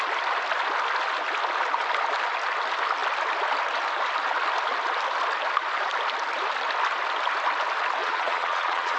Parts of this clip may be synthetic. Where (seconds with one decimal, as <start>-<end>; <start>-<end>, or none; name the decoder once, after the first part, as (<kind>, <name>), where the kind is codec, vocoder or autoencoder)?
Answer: 8.0-9.0 (vocoder, Vocos)